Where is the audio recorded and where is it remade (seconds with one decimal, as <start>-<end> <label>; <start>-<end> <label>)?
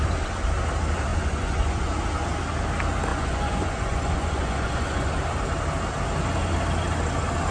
0.0-1.1 recorded; 1.1-1.9 remade; 1.9-3.1 recorded; 3.1-5.1 remade; 5.1-7.5 recorded